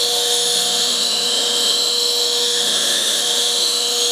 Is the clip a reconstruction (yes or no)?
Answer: yes